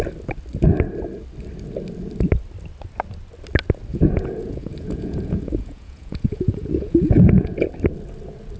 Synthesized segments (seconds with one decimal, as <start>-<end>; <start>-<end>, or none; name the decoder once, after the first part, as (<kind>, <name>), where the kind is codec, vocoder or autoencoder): 3.9-7.7 (vocoder, Vocos)